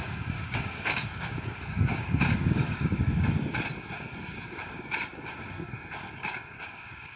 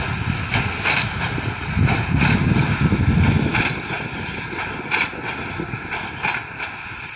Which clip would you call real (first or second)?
second